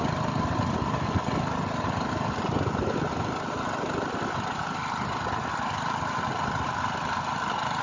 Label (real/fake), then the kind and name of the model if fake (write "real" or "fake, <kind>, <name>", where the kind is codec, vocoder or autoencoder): real